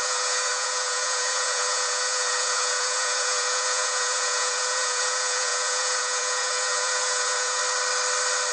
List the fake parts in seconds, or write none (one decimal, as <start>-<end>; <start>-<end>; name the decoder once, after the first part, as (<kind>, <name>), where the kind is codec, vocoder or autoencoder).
0.0-7.6 (vocoder, Vocos)